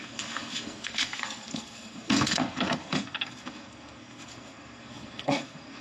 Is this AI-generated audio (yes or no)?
yes